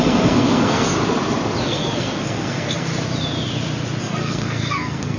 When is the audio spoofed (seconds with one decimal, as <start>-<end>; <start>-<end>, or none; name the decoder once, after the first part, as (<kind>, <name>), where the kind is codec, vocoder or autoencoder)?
0.0-0.9 (codec, SNAC); 1.6-2.9; 4.0-5.2